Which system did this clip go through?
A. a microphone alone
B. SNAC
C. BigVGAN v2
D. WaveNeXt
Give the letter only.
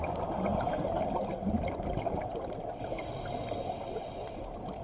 A